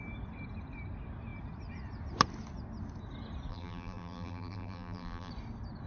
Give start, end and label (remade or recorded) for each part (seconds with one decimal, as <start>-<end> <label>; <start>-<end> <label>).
0.0-3.5 recorded; 3.5-5.3 remade; 5.3-5.9 recorded